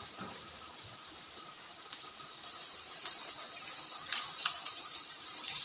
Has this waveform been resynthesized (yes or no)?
yes